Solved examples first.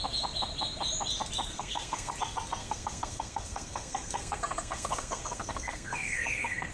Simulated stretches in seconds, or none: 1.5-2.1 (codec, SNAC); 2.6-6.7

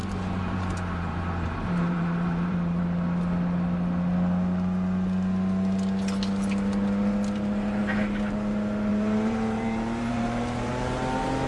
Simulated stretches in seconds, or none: 0.0-2.8 (vocoder, BigVGAN v2); 8.9-10.7

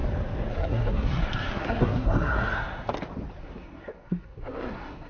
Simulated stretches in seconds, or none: 0.5-2.9 (codec, SNAC); 3.4-5.1

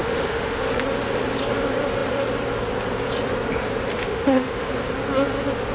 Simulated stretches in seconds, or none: 0.0-0.6 (autoencoder, DAC-VAE); 3.9-4.7

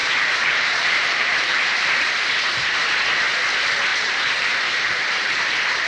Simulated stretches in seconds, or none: 0.0-2.3 (vocoder, BigVGAN v2); 3.9-5.9

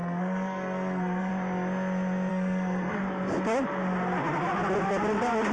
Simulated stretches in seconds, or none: 0.0-1.3 (codec, SNAC); 2.3-3.0

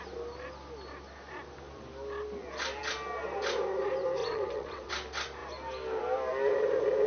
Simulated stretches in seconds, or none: 4.2-4.9 (vocoder, WaveNeXt)

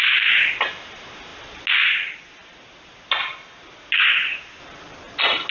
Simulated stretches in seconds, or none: none